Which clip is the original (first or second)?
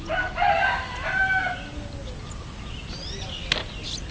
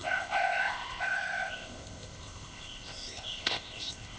first